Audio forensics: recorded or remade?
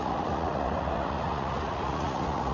remade